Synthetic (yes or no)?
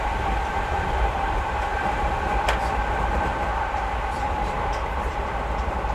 yes